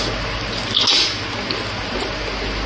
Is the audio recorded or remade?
recorded